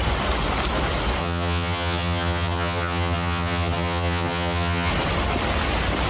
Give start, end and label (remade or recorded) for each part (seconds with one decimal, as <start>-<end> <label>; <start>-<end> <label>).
0.0-1.2 recorded; 1.2-4.9 remade; 4.9-6.1 recorded